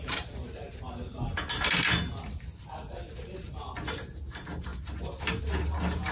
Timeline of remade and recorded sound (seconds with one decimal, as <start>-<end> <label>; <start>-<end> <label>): 0.0-6.1 recorded